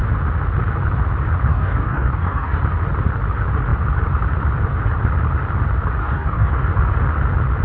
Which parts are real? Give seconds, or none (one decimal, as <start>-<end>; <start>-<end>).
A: 0.0-1.5; 2.6-6.0; 6.5-7.6